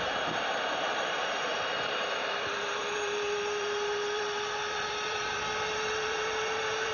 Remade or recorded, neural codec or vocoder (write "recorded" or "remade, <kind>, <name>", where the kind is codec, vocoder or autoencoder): remade, vocoder, BigVGAN v2